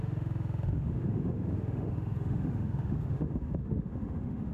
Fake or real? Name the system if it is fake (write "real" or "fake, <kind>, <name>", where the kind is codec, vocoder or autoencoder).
fake, autoencoder, DAC-VAE